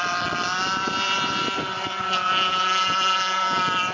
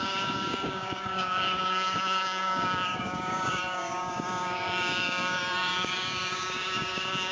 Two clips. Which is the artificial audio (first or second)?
second